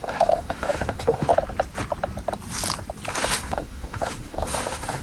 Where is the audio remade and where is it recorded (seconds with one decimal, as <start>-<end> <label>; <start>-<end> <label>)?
0.0-1.3 remade; 1.3-3.1 recorded; 3.1-5.0 remade

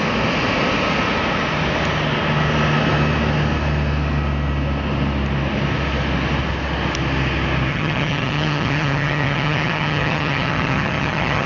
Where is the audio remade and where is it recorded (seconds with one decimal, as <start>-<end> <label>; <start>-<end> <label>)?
0.0-7.7 recorded; 7.7-11.5 remade

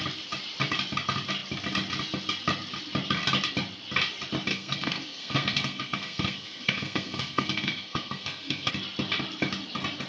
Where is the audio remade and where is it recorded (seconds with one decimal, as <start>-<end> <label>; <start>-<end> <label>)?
0.0-4.5 recorded; 4.5-8.7 remade; 8.7-10.1 recorded

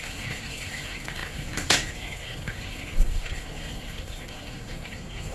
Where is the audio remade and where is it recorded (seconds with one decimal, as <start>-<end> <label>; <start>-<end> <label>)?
0.0-5.3 remade

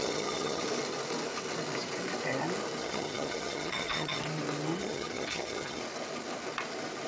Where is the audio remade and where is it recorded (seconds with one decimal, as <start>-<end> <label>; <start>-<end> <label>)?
0.0-0.6 remade; 0.6-2.8 recorded; 2.8-4.2 remade; 4.2-4.8 recorded; 4.8-5.8 remade; 5.8-7.1 recorded

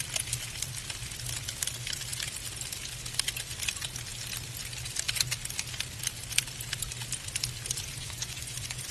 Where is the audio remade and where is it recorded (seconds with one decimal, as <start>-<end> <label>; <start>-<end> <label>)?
0.0-8.0 recorded; 8.0-8.9 remade

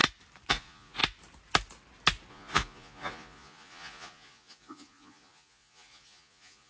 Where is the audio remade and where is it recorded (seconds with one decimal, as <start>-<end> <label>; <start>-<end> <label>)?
0.0-0.5 recorded; 0.5-1.0 remade; 1.0-2.3 recorded; 2.3-6.7 remade

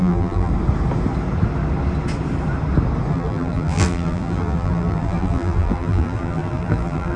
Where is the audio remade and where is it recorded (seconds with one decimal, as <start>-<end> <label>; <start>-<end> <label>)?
0.0-0.5 remade; 0.5-3.1 recorded; 3.1-7.2 remade